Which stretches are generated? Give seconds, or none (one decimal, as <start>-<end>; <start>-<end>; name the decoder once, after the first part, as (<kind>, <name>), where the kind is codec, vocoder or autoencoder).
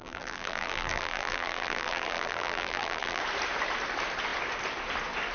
0.0-3.2 (vocoder, BigVGAN v2)